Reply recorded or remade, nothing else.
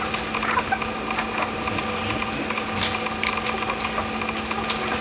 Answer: recorded